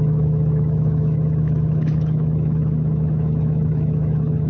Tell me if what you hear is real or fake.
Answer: fake